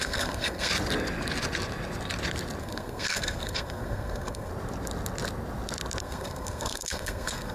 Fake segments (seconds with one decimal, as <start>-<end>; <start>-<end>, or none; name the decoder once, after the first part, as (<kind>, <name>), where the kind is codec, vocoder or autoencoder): 0.0-0.7 (codec, SNAC); 2.6-4.5; 6.0-7.5